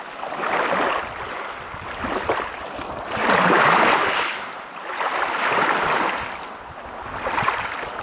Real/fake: real